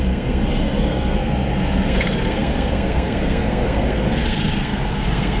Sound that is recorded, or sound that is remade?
remade